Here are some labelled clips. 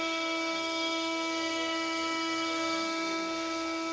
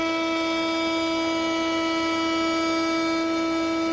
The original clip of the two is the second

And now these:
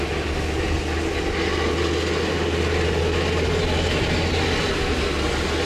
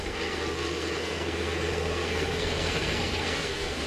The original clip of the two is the first